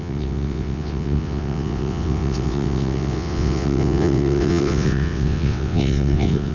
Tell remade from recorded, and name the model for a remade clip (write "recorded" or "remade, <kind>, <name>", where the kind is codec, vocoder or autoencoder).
remade, vocoder, WaveNeXt